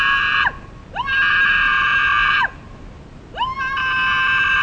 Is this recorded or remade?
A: recorded